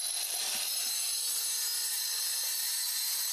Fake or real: real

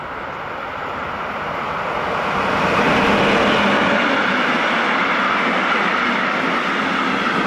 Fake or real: real